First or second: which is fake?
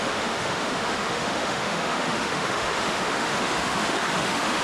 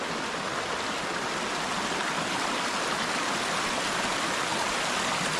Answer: first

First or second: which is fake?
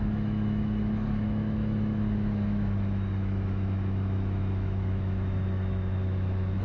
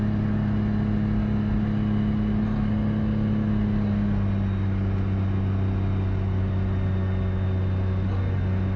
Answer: first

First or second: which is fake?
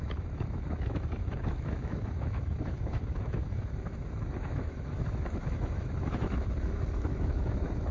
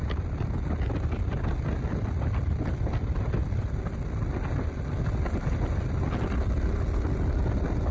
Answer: first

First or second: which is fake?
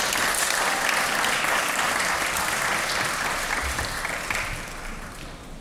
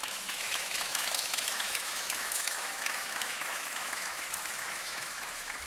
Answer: second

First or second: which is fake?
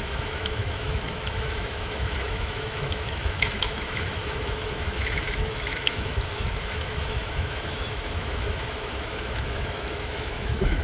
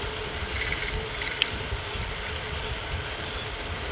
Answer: first